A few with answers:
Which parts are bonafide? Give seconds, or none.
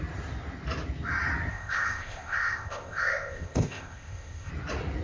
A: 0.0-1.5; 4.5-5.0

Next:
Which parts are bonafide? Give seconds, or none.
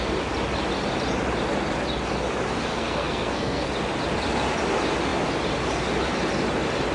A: 0.0-2.7; 3.7-6.9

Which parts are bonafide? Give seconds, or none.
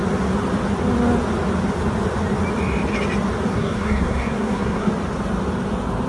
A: 0.0-3.5; 4.9-6.1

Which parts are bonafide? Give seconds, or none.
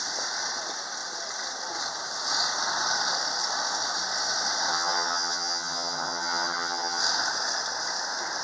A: 0.0-4.7; 7.0-8.4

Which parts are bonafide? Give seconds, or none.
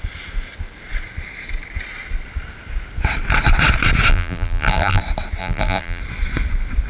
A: 0.0-4.1; 5.0-5.4; 6.0-6.9